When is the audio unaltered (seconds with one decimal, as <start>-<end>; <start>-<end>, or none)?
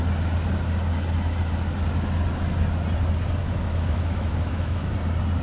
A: 0.0-3.4; 4.9-5.4